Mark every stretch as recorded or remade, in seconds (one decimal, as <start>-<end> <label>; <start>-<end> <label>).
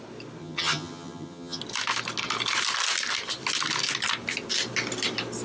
0.0-0.4 recorded; 0.4-1.6 remade; 1.6-5.4 recorded